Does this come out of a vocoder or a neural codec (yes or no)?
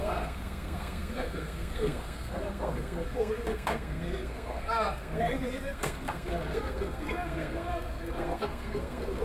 yes